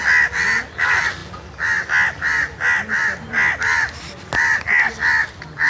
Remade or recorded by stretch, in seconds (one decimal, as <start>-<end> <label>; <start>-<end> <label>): 0.0-5.7 recorded